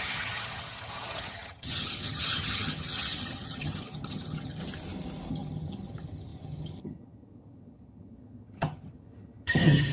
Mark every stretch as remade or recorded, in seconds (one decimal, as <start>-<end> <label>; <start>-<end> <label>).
0.0-4.6 remade; 4.6-5.3 recorded; 5.3-9.9 remade